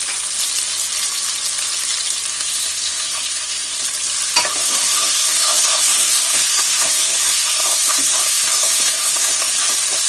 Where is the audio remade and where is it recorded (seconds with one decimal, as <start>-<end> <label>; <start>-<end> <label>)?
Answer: 0.0-2.3 recorded; 2.3-3.8 remade; 3.8-4.6 recorded; 4.6-9.5 remade; 9.5-10.1 recorded